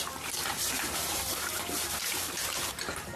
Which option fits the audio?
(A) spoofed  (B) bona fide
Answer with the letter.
A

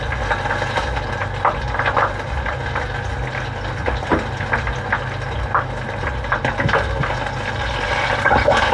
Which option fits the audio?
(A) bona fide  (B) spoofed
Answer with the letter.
A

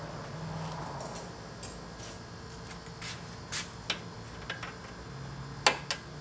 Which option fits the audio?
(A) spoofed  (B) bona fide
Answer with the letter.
B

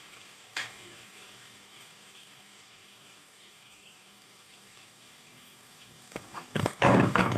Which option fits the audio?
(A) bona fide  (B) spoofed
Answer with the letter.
B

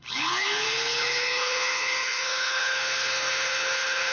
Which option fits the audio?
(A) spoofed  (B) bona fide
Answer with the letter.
A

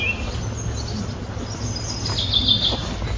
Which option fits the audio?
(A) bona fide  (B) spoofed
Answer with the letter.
A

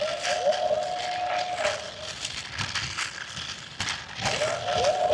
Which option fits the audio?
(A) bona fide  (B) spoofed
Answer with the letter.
A